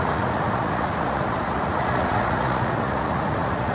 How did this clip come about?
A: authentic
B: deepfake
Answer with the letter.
B